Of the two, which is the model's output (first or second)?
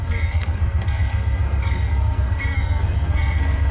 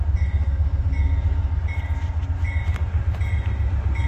first